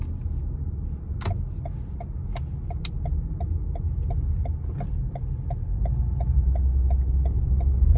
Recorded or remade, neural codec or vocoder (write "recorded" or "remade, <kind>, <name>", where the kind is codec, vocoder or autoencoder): recorded